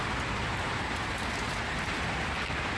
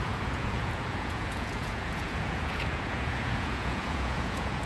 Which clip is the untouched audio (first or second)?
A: first